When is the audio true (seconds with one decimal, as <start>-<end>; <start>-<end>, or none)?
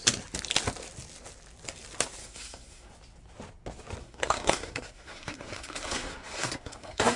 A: 0.0-2.2; 2.9-4.0